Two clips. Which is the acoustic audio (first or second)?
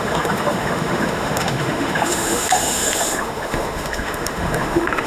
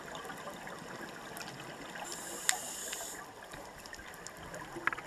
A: second